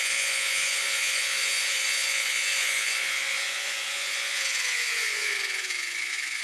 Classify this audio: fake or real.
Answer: fake